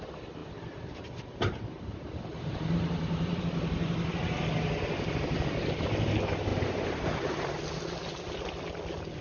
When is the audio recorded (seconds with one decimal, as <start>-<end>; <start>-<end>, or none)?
0.0-0.4; 3.4-6.5; 7.5-9.2